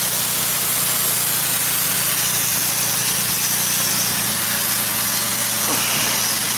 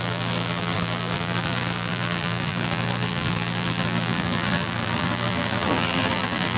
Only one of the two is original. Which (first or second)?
first